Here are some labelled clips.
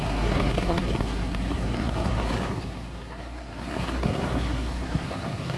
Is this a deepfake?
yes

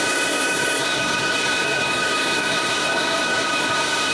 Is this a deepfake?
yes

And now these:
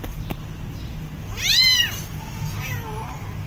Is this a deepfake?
no